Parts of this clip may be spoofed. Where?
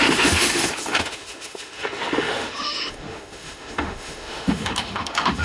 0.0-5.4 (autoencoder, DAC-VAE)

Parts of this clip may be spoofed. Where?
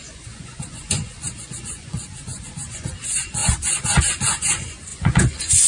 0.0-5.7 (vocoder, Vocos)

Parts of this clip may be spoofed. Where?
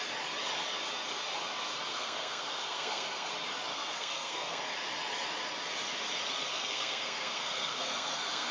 1.9-3.3 (codec, SNAC); 3.7-4.6; 6.5-8.5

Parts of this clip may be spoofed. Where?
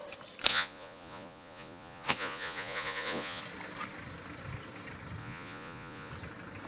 0.5-3.4 (vocoder, Vocos); 5.2-6.1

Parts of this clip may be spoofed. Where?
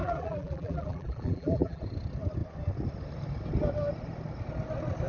0.0-1.8 (vocoder, BigVGAN v2)